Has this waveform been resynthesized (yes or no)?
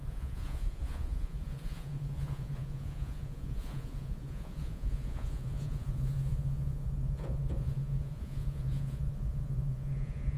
yes